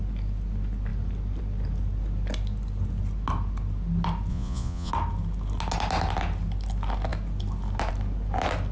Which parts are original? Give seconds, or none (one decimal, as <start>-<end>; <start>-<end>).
0.0-4.3; 4.9-8.7